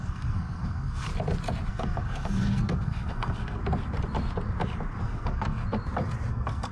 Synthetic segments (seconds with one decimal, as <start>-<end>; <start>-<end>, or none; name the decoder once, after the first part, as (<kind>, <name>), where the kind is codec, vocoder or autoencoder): 0.0-1.1 (codec, SNAC); 1.7-3.6; 5.0-5.6; 6.3-6.7